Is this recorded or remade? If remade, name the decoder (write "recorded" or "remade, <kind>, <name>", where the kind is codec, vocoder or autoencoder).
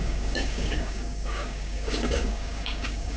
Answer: remade, codec, DAC